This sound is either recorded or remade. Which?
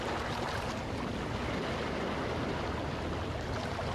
recorded